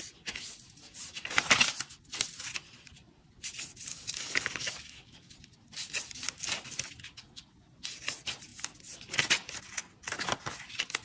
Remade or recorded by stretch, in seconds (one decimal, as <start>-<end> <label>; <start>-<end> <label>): 0.0-3.9 recorded; 3.9-5.3 remade; 5.3-11.0 recorded